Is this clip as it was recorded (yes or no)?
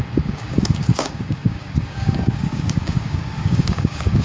no